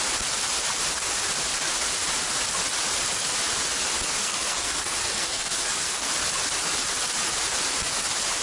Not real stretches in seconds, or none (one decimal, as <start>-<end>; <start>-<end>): 4.2-6.1